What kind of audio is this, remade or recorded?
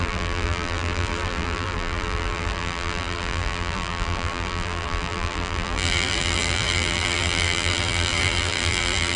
remade